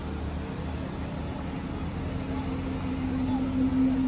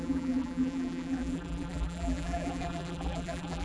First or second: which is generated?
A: second